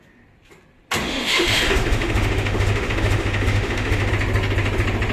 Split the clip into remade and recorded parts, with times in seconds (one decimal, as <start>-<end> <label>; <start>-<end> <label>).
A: 0.0-1.0 recorded; 1.0-4.1 remade; 4.1-5.1 recorded